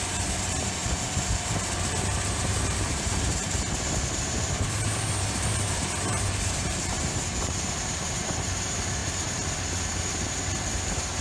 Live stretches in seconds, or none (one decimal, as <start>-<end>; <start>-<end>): none